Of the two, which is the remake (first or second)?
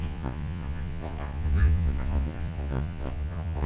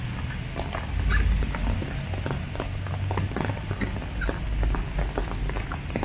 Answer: first